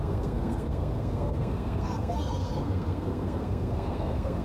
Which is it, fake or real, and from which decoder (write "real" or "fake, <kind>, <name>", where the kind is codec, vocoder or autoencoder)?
fake, codec, SNAC